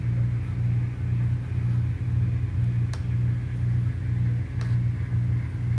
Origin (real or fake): real